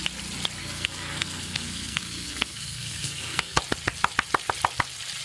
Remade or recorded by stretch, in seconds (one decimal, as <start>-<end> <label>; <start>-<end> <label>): 0.0-0.6 recorded; 0.6-3.6 remade; 3.6-5.2 recorded